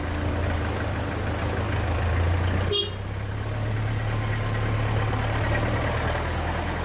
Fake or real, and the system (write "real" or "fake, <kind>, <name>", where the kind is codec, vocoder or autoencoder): real